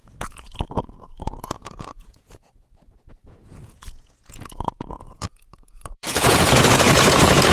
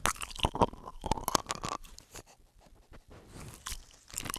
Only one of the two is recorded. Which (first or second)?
second